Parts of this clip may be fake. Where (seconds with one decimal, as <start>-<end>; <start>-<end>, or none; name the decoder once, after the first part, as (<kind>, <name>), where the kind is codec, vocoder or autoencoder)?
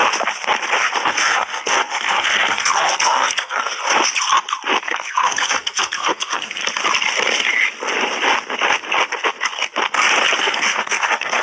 1.1-3.6 (codec, SNAC); 4.8-6.6; 10.4-11.4